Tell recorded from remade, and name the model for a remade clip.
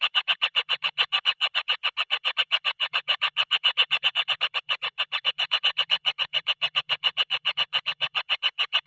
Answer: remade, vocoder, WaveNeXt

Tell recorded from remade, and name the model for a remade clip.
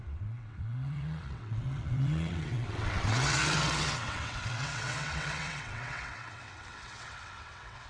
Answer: remade, vocoder, WaveNeXt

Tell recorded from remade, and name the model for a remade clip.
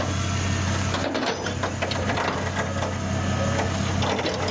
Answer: recorded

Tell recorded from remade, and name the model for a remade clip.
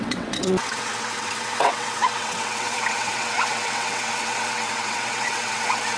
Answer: remade, vocoder, WaveNeXt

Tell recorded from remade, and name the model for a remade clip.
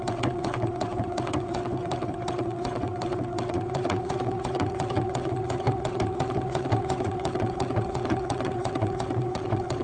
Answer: remade, vocoder, WaveNeXt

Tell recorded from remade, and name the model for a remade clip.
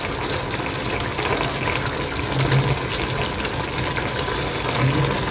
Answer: recorded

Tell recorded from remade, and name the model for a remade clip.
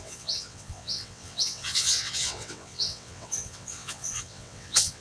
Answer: remade, vocoder, WaveNeXt